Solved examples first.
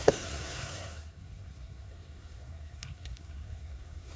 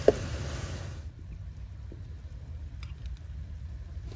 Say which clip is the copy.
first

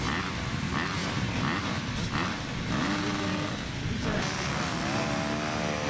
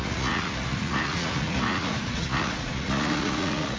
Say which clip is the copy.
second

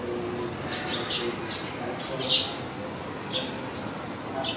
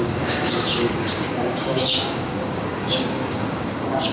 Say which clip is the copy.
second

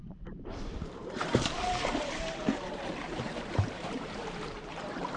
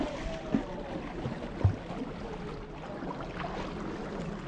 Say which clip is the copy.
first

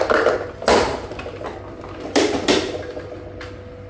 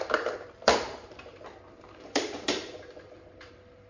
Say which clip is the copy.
second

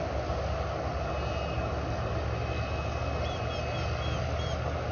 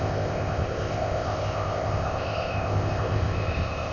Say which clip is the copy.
second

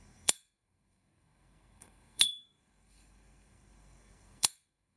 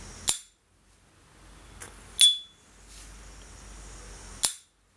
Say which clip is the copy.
first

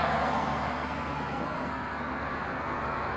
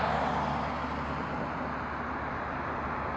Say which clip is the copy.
first